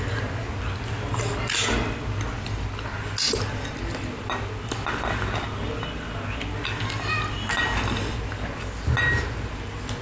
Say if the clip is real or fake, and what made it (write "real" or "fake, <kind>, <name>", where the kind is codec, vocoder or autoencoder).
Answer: real